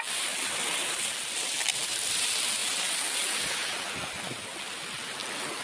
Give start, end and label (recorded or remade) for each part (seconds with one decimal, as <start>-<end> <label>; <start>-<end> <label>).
0.0-2.6 remade; 2.6-3.8 recorded; 3.8-5.6 remade